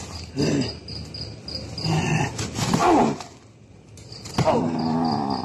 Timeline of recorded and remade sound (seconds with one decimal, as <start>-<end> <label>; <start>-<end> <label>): 0.0-5.4 recorded